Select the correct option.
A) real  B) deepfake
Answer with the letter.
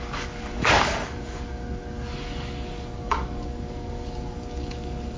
B